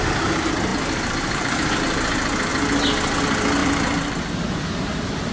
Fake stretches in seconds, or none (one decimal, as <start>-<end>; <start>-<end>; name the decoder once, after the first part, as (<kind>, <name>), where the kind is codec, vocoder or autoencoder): 0.7-1.8 (vocoder, BigVGAN v2); 3.6-4.7